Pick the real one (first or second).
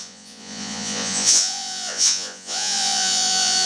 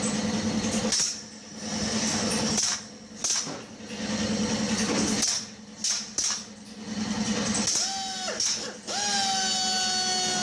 second